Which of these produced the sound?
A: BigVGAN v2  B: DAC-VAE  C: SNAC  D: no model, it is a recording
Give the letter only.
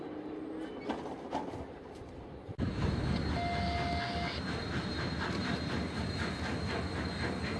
D